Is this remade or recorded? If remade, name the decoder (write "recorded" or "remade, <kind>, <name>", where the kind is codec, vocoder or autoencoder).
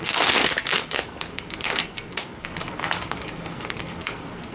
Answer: remade, codec, SNAC